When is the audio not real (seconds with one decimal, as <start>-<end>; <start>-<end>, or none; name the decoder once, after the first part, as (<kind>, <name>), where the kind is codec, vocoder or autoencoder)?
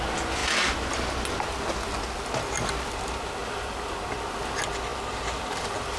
3.4-4.0 (vocoder, BigVGAN v2); 4.9-6.0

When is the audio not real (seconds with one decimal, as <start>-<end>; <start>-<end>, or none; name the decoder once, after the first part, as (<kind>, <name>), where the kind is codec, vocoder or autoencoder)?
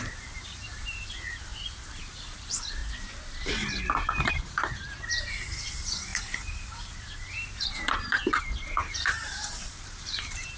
0.0-2.8 (vocoder, BigVGAN v2); 4.3-10.6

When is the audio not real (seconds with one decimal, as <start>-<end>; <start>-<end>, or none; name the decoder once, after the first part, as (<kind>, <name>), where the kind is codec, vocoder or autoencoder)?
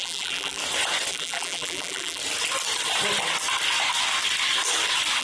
0.0-0.6 (vocoder, BigVGAN v2); 1.1-2.2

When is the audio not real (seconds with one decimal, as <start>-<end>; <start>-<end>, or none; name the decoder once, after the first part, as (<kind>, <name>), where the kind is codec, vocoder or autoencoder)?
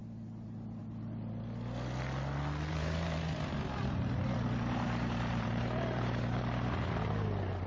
2.7-6.4 (vocoder, BigVGAN v2)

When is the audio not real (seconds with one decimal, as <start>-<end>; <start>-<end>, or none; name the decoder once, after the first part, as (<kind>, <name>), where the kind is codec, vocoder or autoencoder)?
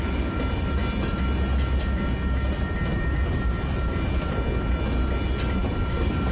5.6-6.3 (vocoder, BigVGAN v2)